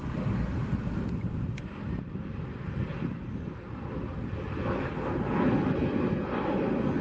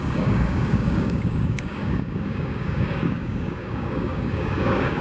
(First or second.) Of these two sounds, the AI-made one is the second